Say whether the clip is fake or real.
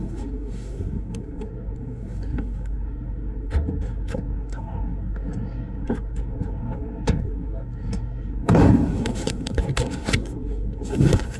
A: fake